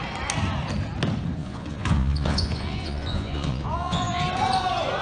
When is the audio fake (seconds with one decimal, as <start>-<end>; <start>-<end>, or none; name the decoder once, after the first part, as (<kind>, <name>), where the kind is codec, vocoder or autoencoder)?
1.4-4.2 (vocoder, Vocos)